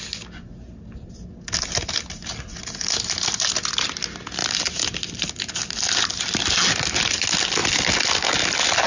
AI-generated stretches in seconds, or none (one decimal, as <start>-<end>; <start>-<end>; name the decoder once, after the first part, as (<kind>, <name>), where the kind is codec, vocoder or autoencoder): none